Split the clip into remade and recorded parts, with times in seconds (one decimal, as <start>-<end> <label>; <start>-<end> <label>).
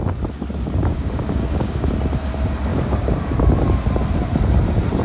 0.0-0.8 recorded; 0.8-1.9 remade; 1.9-2.7 recorded; 2.7-3.3 remade; 3.3-5.0 recorded